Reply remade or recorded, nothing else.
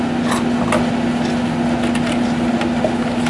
recorded